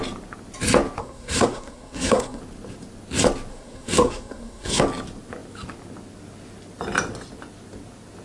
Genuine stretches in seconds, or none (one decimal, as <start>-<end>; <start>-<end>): 0.0-1.0; 2.4-3.5; 4.8-8.2